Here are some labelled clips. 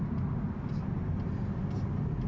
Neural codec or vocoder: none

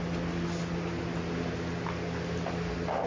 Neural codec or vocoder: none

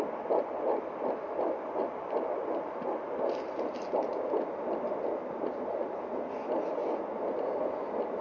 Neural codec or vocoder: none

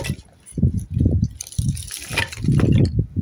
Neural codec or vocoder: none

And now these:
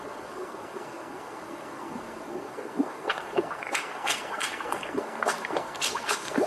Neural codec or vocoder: codec, SNAC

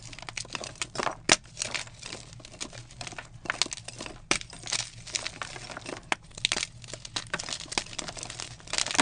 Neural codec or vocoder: none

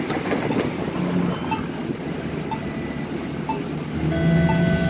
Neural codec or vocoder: none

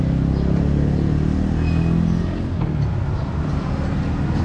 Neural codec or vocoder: none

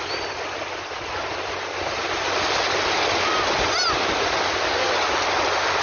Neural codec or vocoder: none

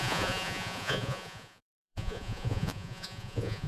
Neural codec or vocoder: vocoder, Vocos